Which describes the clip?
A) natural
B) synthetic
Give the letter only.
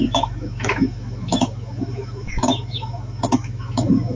B